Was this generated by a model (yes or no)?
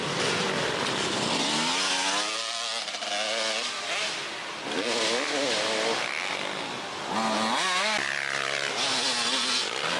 no